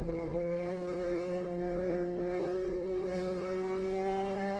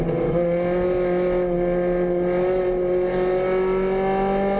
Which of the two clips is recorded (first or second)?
second